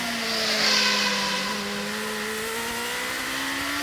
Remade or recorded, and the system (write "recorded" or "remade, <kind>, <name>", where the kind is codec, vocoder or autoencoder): recorded